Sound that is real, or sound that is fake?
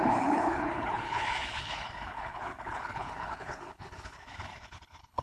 fake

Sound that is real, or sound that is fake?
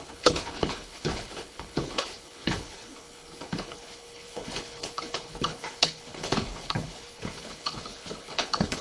fake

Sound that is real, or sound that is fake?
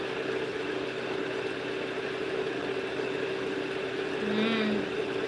real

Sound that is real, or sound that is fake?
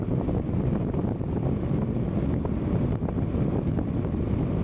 real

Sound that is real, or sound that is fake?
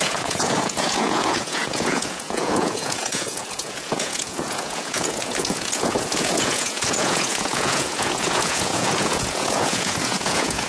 fake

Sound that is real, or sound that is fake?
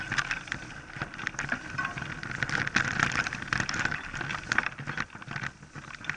real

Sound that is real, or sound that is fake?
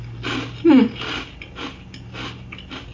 real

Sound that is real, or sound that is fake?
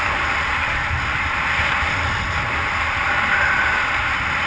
real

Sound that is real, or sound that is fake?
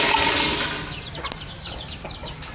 real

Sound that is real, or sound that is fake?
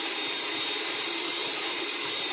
fake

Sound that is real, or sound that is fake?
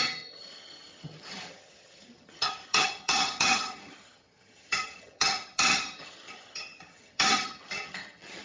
fake